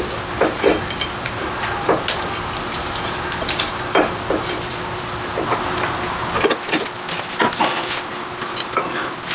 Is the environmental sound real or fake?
real